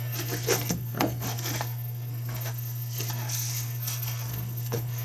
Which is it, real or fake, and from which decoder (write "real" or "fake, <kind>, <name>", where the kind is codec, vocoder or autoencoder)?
fake, codec, SNAC